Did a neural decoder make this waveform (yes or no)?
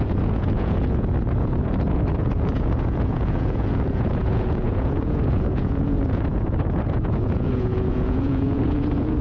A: yes